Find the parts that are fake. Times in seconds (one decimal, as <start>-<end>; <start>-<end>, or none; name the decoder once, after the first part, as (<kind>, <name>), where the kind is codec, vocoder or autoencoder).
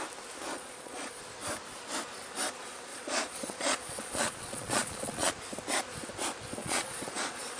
0.5-1.2 (vocoder, Vocos); 2.9-5.3; 6.6-7.6